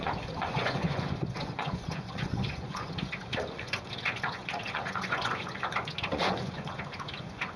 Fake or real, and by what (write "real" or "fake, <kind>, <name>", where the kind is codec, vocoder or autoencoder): fake, vocoder, Vocos